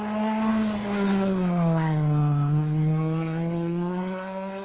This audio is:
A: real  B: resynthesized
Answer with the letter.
B